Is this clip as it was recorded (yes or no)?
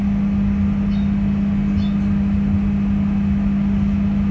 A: yes